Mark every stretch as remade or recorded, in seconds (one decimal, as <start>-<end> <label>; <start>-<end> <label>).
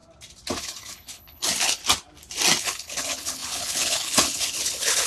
0.0-0.6 recorded; 0.6-1.8 remade; 1.8-2.6 recorded; 2.6-5.1 remade